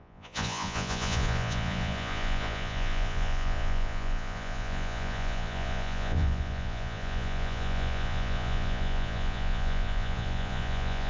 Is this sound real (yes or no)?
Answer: no